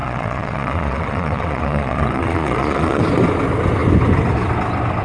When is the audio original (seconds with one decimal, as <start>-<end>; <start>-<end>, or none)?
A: 3.0-5.0